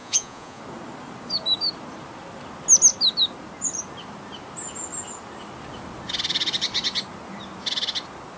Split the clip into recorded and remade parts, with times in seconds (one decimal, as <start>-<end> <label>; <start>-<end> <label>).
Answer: 0.0-0.6 remade; 0.6-8.4 recorded